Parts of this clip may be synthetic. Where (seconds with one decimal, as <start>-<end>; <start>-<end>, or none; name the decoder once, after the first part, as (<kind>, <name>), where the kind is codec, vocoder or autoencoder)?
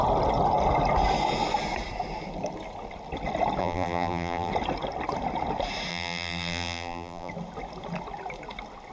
3.6-4.5 (vocoder, BigVGAN v2); 5.9-7.3